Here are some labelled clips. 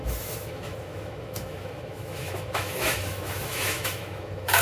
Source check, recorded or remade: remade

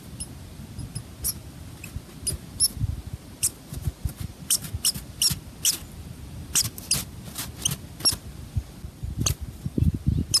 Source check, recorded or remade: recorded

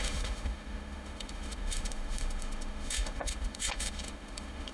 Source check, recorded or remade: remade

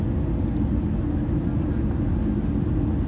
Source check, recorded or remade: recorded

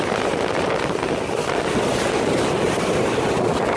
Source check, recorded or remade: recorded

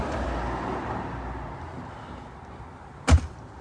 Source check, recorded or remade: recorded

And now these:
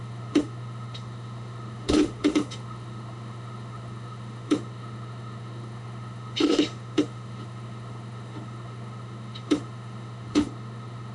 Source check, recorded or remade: remade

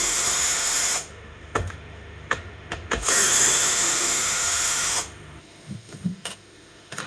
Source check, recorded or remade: remade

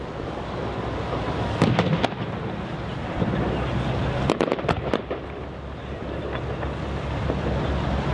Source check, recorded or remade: recorded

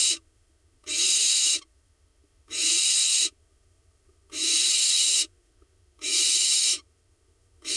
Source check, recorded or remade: remade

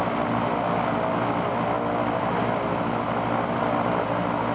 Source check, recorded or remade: recorded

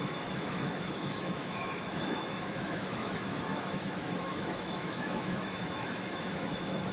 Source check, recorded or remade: remade